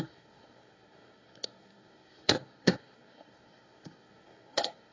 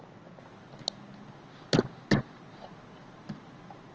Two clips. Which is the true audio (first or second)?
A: second